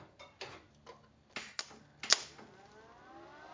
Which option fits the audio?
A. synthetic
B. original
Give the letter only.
B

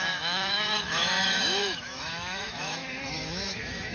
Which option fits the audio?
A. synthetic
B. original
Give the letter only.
A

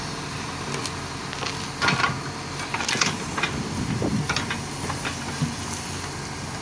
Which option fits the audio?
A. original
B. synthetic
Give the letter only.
A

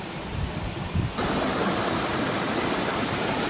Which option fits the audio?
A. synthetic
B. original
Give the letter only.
B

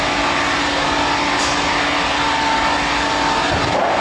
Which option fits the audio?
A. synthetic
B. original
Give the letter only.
B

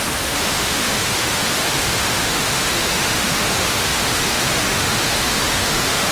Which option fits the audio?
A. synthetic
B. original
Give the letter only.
A